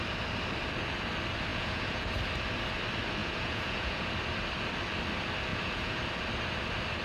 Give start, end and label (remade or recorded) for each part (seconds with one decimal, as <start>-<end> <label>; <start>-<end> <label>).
0.0-1.5 recorded; 1.5-2.1 remade; 2.1-3.2 recorded; 3.2-4.1 remade; 4.1-5.5 recorded; 5.5-6.0 remade; 6.0-7.0 recorded